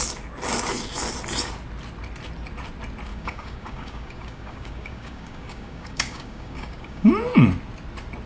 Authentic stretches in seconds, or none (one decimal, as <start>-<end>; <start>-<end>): 0.0-3.1; 7.1-8.3